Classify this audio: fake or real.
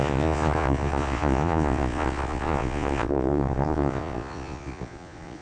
fake